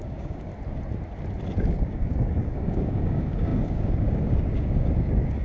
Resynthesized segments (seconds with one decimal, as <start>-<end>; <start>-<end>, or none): 0.0-0.5; 1.6-5.4